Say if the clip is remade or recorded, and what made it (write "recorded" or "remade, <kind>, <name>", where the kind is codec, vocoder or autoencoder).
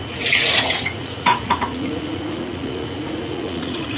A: remade, vocoder, Vocos